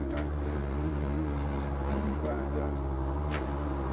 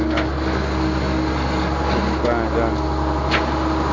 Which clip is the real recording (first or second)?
second